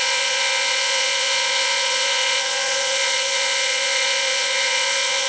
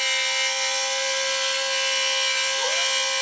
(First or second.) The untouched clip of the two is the second